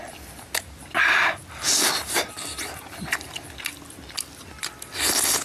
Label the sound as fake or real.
real